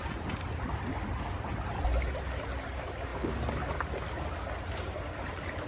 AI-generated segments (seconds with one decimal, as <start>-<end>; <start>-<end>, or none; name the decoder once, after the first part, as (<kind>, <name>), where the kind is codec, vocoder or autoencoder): none